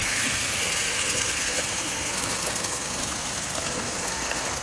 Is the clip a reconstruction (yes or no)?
yes